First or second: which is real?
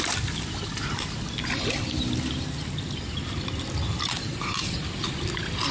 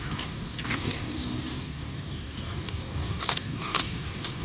first